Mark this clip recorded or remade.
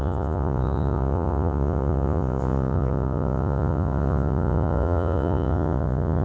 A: remade